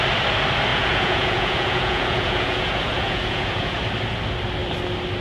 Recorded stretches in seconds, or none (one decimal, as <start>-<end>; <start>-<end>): 0.0-0.7; 3.8-5.2